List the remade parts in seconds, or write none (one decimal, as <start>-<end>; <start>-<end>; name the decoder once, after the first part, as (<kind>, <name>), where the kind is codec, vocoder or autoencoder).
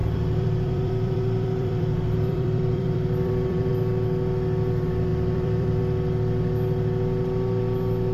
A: 0.0-3.7 (vocoder, BigVGAN v2); 5.1-5.8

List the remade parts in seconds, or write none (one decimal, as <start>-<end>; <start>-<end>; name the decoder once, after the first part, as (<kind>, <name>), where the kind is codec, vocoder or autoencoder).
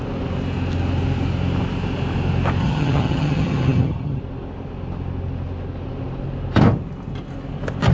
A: 2.6-4.2 (vocoder, HiFi-GAN)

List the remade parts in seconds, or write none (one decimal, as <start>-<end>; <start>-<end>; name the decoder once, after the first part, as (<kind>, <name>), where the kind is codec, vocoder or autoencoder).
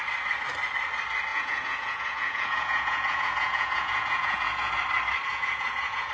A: 1.3-4.7 (vocoder, Vocos); 5.3-6.1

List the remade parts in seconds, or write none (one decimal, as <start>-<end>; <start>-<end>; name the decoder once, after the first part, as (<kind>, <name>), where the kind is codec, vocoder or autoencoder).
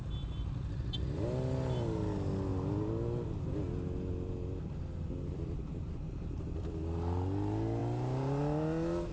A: none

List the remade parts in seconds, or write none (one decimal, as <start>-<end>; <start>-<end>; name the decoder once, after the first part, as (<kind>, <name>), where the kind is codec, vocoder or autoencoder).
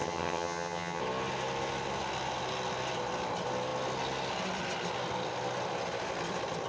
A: 0.0-1.0 (vocoder, HiFi-GAN)